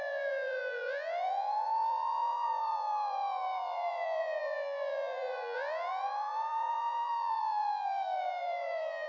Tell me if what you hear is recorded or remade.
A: remade